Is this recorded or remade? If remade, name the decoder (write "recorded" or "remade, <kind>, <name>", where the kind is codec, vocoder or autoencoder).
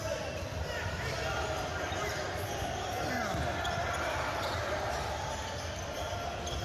recorded